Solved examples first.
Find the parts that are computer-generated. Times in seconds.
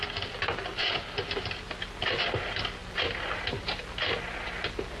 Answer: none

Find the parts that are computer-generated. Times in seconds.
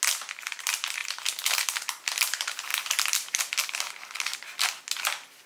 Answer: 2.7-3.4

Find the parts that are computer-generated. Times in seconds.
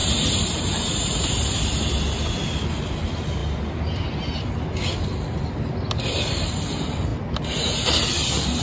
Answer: 0.0-1.6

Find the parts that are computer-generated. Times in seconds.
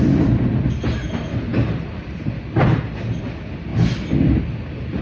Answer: none